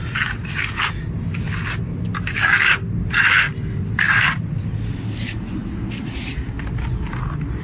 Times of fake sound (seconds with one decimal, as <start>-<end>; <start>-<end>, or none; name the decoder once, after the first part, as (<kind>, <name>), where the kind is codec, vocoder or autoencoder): none

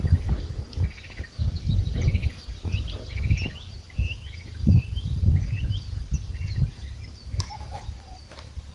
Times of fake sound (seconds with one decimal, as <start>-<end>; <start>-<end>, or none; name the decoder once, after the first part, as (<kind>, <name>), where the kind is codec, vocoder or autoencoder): 0.0-2.2 (vocoder, BigVGAN v2); 3.7-8.7

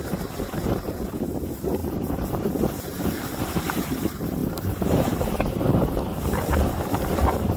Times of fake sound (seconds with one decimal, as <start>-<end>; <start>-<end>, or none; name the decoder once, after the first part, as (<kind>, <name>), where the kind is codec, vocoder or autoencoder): 1.8-3.2 (vocoder, BigVGAN v2); 4.4-6.7

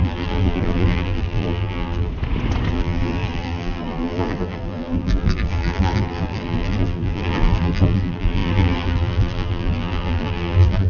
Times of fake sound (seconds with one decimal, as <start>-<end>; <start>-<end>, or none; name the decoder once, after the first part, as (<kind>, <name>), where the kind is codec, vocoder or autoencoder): 0.0-2.1 (vocoder, BigVGAN v2); 2.7-10.9

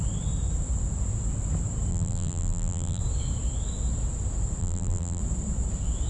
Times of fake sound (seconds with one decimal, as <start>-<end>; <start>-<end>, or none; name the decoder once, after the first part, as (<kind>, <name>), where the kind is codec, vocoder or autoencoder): 1.9-3.0 (vocoder, BigVGAN v2); 4.6-5.2

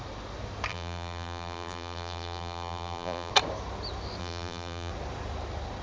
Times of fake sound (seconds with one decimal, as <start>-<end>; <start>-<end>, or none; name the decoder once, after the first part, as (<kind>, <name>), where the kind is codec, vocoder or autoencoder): 0.7-3.3 (vocoder, BigVGAN v2); 4.2-4.9